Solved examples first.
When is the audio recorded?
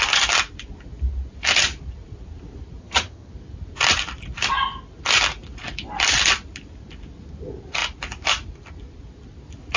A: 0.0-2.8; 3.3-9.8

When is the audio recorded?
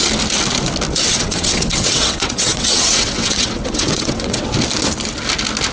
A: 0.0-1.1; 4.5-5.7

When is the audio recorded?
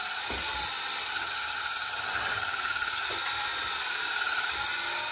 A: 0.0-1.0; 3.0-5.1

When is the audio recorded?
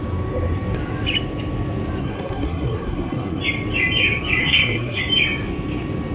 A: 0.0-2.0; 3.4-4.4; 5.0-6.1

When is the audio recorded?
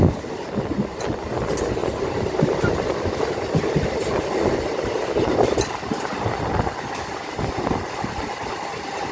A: 0.0-9.1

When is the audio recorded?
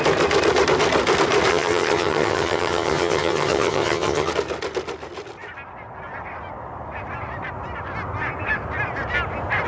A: 0.0-1.5; 4.3-9.7